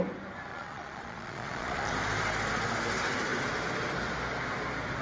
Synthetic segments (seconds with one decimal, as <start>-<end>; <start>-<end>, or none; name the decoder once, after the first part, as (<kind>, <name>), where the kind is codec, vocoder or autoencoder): 0.5-1.9 (vocoder, Vocos)